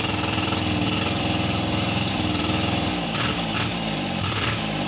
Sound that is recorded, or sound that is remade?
remade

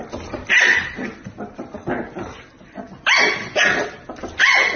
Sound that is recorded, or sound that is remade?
recorded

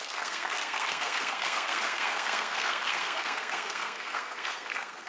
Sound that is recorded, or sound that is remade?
remade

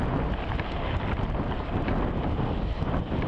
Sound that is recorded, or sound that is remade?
recorded